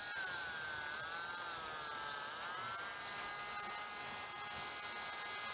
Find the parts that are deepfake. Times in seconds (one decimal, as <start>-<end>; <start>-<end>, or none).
none